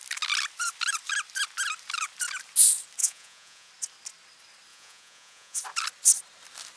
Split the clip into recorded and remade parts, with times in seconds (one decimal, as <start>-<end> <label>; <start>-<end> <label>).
0.0-3.0 recorded; 3.0-3.7 remade; 3.7-4.7 recorded; 4.7-5.6 remade; 5.6-6.8 recorded